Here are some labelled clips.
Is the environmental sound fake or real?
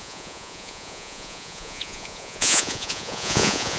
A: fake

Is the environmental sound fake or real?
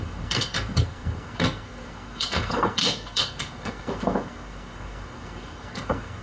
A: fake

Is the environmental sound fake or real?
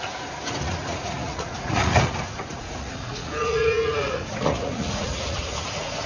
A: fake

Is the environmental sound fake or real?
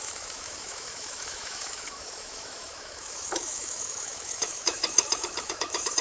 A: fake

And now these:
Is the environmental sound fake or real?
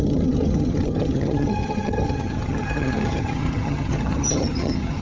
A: fake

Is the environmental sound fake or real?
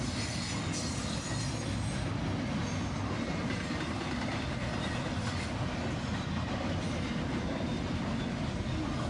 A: real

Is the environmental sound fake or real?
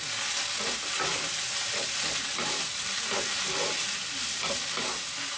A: real